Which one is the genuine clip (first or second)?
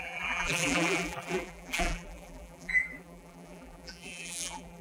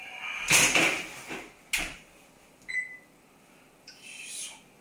second